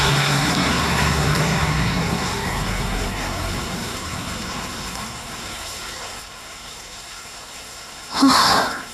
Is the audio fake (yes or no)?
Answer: yes